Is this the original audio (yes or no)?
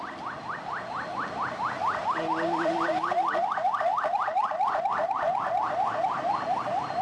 yes